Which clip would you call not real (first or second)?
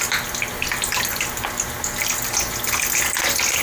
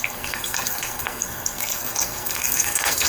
second